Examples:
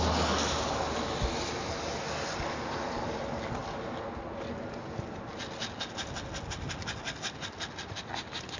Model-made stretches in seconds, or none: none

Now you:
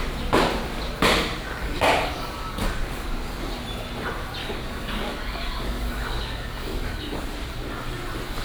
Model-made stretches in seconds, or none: 1.6-3.3 (codec, DAC); 4.4-7.2